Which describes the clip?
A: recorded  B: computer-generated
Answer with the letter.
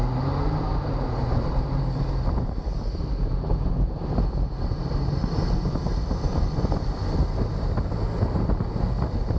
B